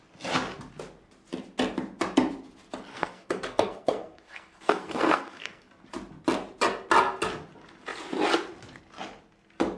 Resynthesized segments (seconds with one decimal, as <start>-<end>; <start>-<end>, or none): 2.9-5.7